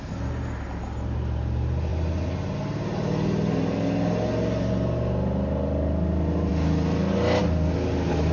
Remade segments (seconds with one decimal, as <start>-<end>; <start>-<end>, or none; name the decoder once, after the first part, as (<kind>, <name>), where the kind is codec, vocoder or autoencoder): none

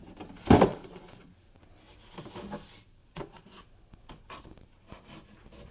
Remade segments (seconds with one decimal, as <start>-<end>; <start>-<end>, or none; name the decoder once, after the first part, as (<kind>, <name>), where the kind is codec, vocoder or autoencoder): 0.7-1.3 (vocoder, Vocos); 3.0-3.6